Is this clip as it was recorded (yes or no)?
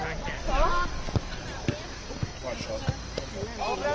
yes